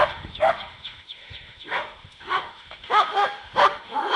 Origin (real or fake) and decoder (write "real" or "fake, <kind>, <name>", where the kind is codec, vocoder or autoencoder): fake, autoencoder, DAC-VAE